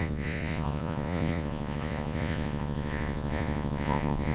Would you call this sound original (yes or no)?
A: no